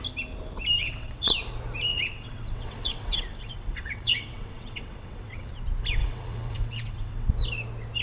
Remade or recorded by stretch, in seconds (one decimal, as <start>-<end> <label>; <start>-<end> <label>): 0.0-0.8 recorded; 0.8-1.3 remade; 1.3-1.9 recorded; 1.9-5.5 remade; 5.5-6.0 recorded; 6.0-7.3 remade; 7.3-8.0 recorded